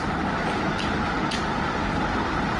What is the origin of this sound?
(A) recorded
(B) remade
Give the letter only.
A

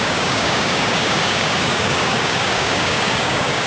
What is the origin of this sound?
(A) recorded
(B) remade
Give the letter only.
B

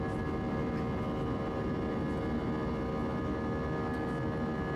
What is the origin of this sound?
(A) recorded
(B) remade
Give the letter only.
A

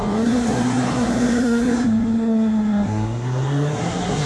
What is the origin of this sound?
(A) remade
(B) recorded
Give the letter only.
A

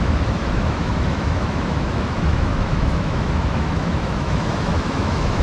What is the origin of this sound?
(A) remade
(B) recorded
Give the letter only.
A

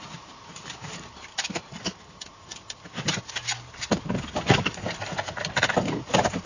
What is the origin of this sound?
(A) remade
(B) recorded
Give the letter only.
A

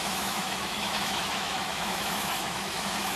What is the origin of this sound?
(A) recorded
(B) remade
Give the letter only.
B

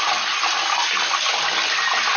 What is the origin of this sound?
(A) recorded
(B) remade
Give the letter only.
A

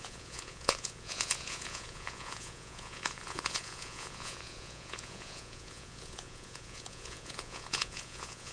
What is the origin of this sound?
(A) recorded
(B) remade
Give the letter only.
B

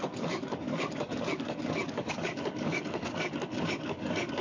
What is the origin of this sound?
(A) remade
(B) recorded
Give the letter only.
A